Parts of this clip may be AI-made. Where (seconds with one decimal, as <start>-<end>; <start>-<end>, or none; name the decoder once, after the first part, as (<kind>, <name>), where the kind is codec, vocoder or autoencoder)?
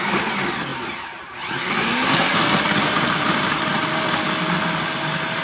2.3-4.2 (vocoder, BigVGAN v2)